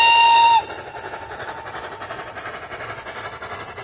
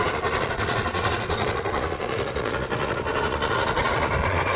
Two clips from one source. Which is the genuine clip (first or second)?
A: first